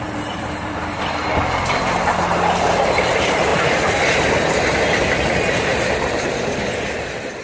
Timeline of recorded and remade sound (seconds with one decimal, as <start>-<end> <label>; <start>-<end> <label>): 0.0-3.5 remade; 3.5-4.3 recorded; 4.3-7.4 remade